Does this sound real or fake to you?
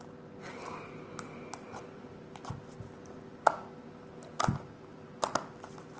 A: real